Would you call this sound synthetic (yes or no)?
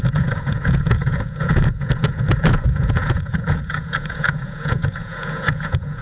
yes